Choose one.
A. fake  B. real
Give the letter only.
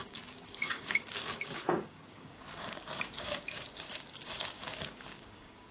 A